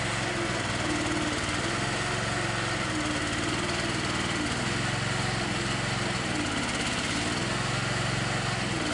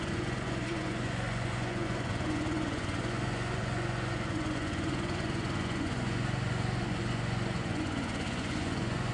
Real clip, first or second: first